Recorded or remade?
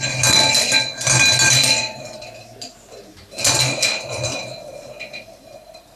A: recorded